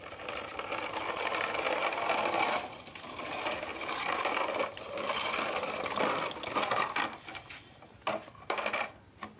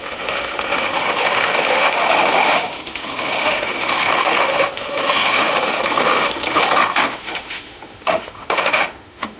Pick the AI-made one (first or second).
second